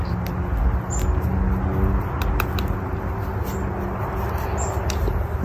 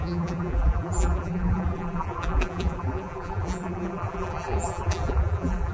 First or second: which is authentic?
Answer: first